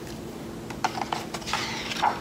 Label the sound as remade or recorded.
recorded